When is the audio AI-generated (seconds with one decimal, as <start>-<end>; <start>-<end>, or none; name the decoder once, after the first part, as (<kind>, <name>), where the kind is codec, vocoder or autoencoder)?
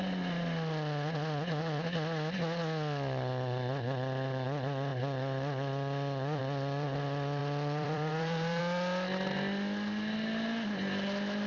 7.4-8.6 (vocoder, BigVGAN v2)